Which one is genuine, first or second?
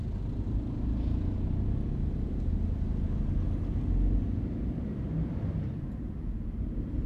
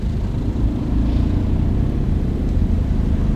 first